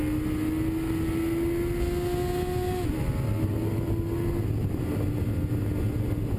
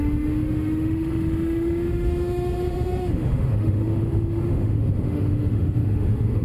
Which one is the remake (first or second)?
second